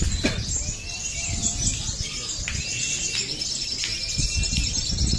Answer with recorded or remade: recorded